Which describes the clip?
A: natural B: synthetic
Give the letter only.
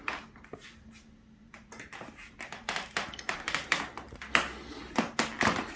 A